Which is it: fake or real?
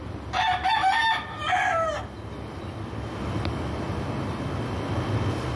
real